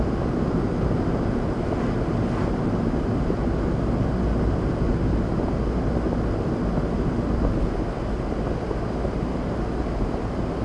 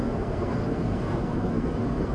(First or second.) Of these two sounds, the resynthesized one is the second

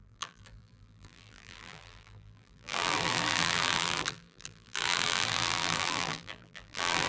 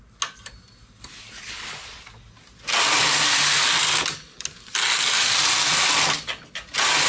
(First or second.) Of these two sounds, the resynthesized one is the first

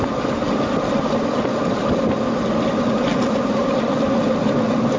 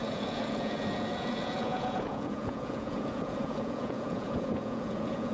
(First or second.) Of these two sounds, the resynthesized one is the second